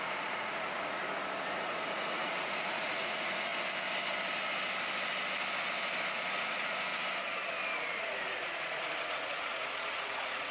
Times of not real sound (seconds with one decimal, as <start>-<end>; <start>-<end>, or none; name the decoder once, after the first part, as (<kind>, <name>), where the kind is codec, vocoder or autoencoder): 0.0-1.0 (vocoder, Vocos); 1.5-3.5; 6.1-6.9; 7.8-10.5